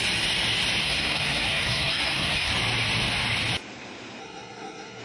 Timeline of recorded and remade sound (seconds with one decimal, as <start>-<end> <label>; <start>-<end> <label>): 0.0-0.8 recorded; 0.8-2.5 remade; 2.5-4.2 recorded; 4.2-5.0 remade